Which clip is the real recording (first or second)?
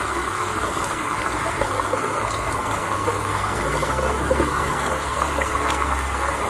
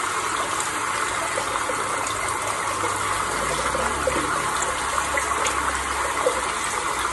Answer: second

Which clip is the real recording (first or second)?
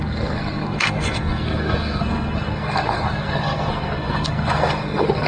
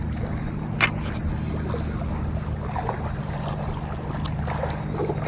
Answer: second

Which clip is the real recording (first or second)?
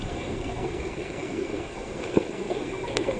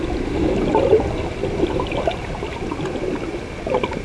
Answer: second